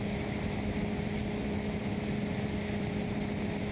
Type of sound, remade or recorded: recorded